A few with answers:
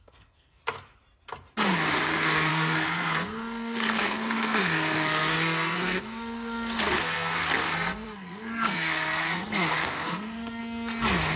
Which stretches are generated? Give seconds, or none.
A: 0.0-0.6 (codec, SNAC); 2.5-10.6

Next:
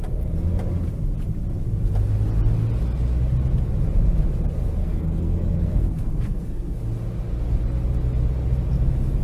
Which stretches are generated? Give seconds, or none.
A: 4.8-6.8 (codec, SNAC)

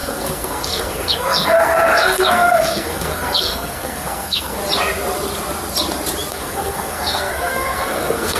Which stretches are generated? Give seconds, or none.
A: 0.0-4.6 (codec, SNAC); 6.3-8.4

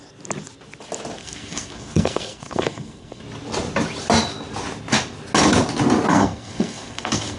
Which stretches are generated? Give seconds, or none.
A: 1.2-3.2 (codec, SNAC); 6.1-7.4